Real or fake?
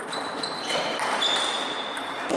fake